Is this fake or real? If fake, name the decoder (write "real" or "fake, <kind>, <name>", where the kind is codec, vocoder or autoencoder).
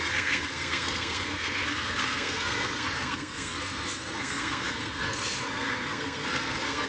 fake, codec, SNAC